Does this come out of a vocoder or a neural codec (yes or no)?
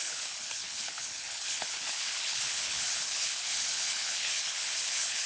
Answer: yes